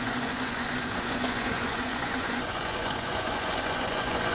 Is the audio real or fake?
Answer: fake